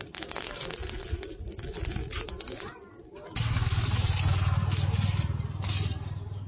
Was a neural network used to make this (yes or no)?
no